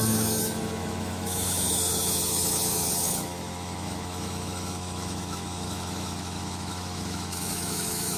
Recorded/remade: remade